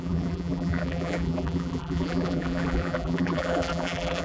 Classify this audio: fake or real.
fake